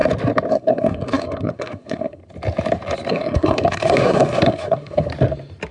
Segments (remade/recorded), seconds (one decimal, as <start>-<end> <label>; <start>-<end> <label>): 0.0-0.5 recorded; 0.5-2.2 remade; 2.2-3.1 recorded; 3.1-5.1 remade; 5.1-5.7 recorded